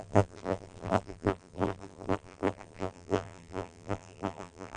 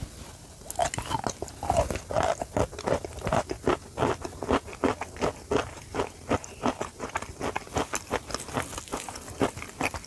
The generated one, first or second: first